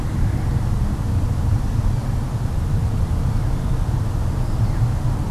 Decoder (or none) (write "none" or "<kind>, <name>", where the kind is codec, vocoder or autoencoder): none